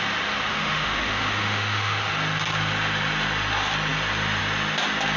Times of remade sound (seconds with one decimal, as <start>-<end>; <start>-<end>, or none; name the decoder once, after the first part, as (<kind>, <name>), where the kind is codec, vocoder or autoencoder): 0.5-2.1 (autoencoder, DAC-VAE)